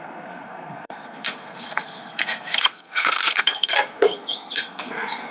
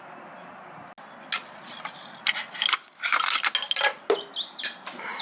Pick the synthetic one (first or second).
first